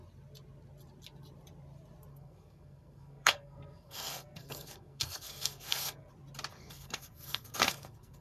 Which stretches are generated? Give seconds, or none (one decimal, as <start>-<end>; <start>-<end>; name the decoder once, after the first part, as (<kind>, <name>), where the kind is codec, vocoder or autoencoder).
2.1-6.1 (codec, SNAC); 6.5-8.2